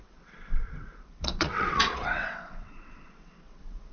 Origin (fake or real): fake